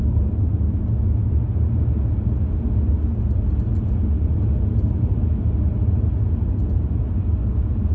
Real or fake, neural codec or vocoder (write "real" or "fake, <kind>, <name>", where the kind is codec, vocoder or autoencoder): real